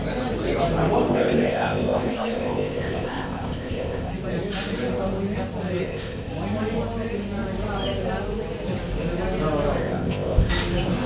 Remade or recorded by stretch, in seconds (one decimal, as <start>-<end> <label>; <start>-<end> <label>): 0.0-1.1 recorded; 1.1-4.1 remade; 4.1-5.8 recorded; 5.8-6.3 remade; 6.3-9.8 recorded; 9.8-10.5 remade; 10.5-11.1 recorded